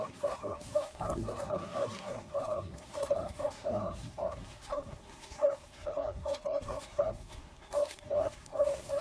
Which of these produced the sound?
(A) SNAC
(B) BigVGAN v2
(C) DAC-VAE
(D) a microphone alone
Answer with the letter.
A